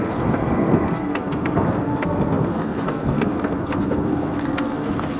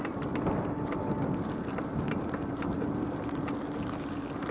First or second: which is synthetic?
first